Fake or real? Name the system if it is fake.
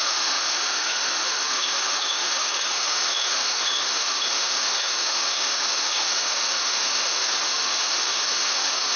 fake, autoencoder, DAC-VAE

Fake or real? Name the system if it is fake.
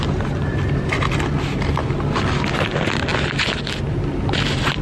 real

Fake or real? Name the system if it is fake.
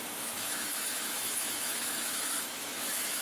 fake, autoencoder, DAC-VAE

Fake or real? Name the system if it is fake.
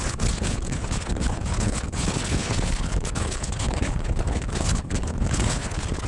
fake, codec, HILCodec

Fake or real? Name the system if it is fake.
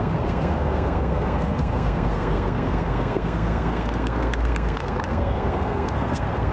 fake, codec, SNAC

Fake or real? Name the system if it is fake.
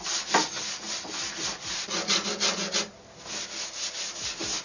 real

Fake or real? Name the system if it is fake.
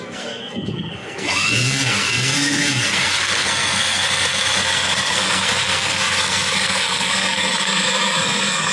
fake, codec, SNAC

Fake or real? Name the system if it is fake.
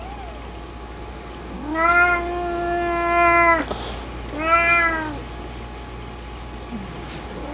real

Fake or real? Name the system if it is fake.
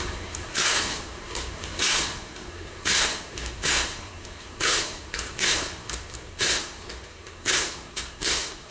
fake, codec, SNAC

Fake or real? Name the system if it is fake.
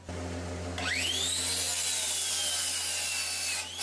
real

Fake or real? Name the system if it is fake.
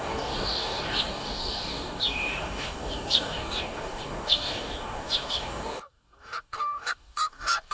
fake, codec, DAC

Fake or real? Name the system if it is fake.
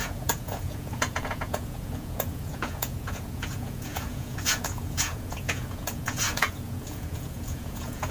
fake, vocoder, Vocos